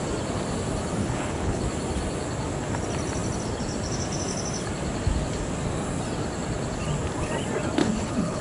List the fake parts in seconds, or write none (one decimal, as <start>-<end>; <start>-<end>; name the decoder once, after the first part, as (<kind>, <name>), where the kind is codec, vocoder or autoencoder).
1.0-1.6 (codec, HILCodec); 7.8-8.4